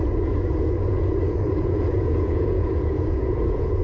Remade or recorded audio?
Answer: remade